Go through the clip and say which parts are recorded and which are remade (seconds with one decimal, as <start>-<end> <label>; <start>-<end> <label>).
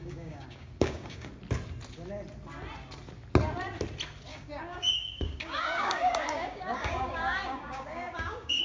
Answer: 0.0-1.3 remade; 1.3-4.3 recorded; 4.3-8.6 remade